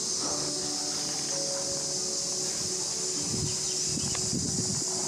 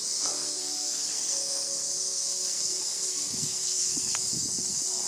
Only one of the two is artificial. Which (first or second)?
second